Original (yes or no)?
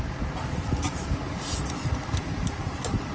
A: yes